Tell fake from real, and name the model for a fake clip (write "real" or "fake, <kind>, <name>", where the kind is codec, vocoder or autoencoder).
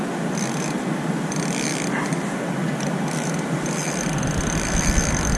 real